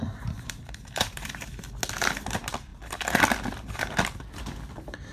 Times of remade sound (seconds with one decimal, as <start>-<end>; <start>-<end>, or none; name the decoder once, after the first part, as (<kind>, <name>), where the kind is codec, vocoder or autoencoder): 0.0-1.7 (vocoder, BigVGAN v2)